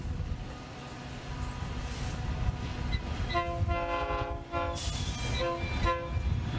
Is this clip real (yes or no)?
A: yes